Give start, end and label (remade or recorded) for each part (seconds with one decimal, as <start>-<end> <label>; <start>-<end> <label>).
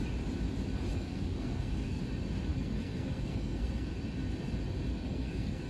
0.0-0.9 recorded; 0.9-2.0 remade; 2.0-2.5 recorded; 2.5-3.9 remade; 3.9-4.9 recorded; 4.9-5.7 remade